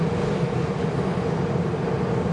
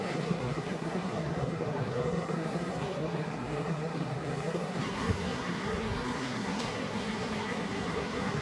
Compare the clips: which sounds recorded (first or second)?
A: first